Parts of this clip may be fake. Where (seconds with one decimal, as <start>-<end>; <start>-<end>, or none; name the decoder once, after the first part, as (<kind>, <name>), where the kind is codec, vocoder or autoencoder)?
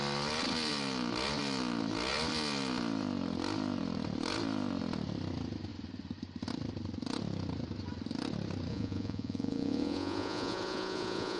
8.7-11.4 (vocoder, Vocos)